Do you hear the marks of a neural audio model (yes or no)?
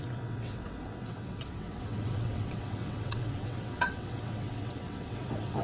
yes